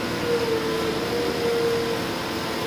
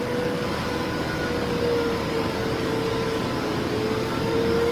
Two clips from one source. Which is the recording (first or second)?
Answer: first